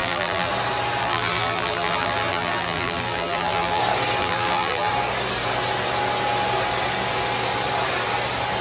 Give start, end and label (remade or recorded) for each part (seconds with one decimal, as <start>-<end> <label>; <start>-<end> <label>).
0.0-0.5 remade; 0.5-1.0 recorded; 1.0-3.8 remade; 3.8-4.2 recorded; 4.2-4.9 remade; 4.9-8.6 recorded